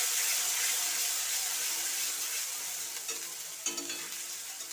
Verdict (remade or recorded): recorded